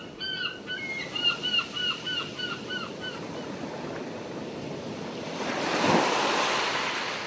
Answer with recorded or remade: recorded